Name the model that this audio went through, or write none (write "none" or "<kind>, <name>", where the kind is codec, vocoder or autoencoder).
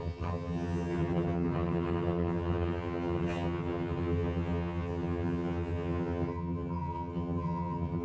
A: vocoder, HiFi-GAN